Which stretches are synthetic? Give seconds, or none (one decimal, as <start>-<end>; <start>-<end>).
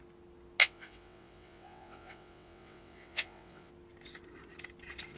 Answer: 0.6-3.7